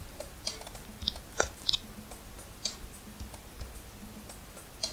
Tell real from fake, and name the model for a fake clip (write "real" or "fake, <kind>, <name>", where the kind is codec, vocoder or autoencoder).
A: real